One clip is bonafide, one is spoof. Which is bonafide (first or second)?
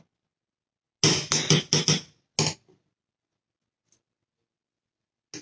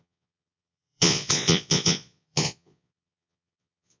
first